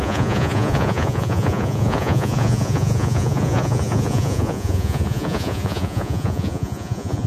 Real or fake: fake